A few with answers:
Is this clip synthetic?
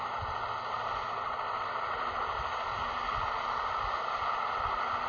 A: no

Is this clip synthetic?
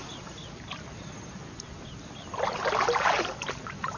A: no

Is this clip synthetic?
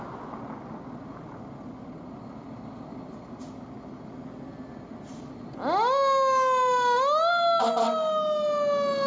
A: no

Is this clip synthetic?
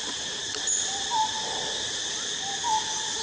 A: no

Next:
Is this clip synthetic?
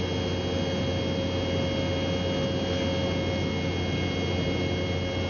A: no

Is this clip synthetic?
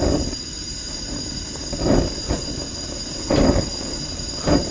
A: no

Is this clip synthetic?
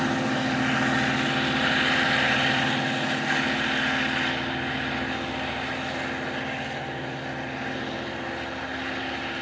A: no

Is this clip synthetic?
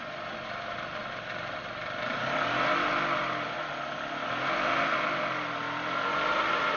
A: no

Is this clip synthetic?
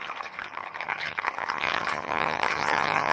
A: yes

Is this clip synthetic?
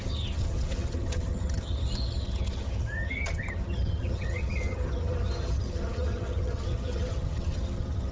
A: yes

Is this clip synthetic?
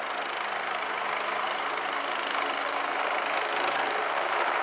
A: no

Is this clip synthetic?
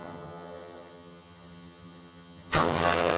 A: yes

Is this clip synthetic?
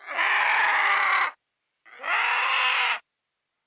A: no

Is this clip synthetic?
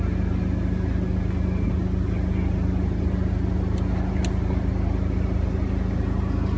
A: no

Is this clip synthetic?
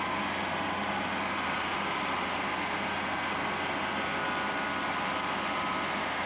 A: no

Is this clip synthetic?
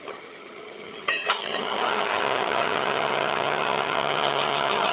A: yes